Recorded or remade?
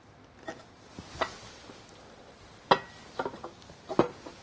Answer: recorded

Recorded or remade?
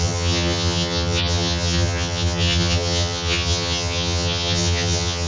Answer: remade